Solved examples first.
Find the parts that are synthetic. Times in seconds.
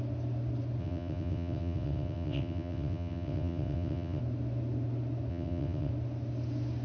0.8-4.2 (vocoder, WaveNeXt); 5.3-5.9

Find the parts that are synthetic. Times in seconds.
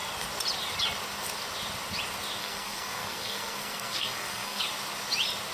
2.4-4.6 (codec, SNAC)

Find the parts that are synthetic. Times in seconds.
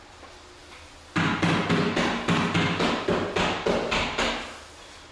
none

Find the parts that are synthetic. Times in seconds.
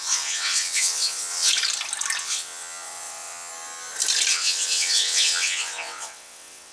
0.0-1.5 (vocoder, WaveNeXt); 2.2-3.5; 4.3-6.7